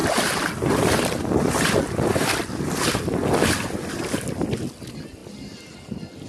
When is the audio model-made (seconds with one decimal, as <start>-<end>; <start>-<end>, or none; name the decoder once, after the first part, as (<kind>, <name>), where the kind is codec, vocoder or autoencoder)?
none